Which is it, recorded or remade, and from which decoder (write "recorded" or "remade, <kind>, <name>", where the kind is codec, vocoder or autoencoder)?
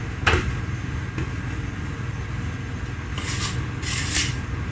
recorded